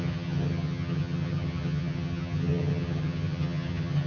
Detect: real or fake fake